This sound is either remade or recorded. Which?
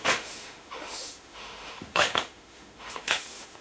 remade